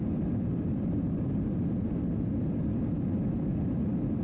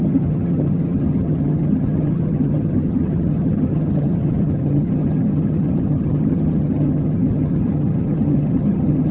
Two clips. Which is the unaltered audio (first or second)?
first